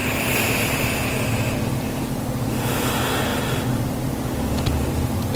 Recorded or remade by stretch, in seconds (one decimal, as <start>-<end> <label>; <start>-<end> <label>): 0.0-5.4 recorded